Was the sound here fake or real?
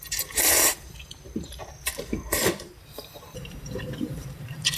fake